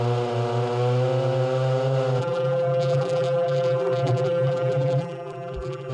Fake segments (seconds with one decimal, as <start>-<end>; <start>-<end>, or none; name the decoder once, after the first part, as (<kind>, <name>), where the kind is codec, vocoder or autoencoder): 2.2-5.9 (vocoder, BigVGAN v2)